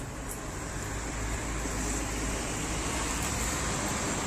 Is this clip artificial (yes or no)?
no